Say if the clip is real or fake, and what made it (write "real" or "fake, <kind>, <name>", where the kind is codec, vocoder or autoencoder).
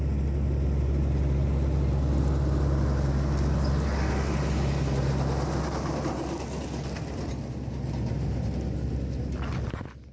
real